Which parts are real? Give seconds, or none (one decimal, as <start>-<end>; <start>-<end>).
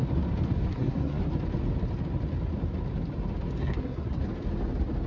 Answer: 0.0-0.7; 1.3-3.6; 4.2-5.1